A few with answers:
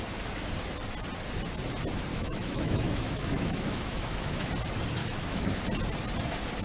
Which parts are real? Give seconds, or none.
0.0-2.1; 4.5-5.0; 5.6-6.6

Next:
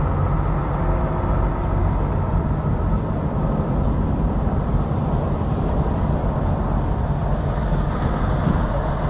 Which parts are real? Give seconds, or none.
0.0-1.8; 6.4-9.1